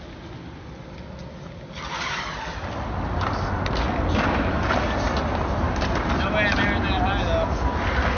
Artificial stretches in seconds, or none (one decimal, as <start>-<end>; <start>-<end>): none